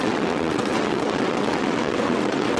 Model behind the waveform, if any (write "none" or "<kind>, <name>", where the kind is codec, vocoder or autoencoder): vocoder, WaveNeXt